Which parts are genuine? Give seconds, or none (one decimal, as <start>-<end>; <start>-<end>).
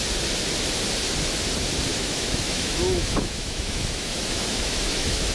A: 0.0-1.9